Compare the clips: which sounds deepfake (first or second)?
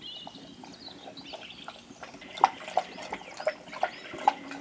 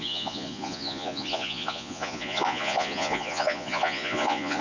second